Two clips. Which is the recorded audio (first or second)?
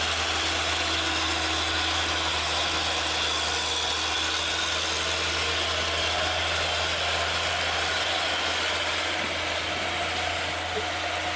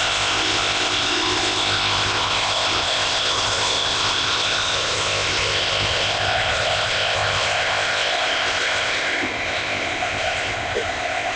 first